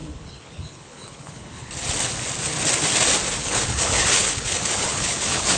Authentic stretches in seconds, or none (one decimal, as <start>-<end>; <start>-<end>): 1.7-3.4